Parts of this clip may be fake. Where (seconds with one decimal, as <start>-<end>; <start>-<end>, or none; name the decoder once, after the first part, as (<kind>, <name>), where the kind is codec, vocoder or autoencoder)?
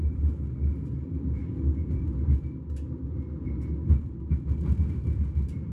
0.0-1.4 (vocoder, BigVGAN v2); 4.8-5.7